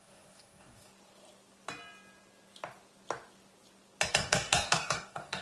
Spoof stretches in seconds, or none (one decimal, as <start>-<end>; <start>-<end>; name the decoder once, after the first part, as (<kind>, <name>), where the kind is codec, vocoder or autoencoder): 0.0-0.9 (codec, DAC); 4.1-5.4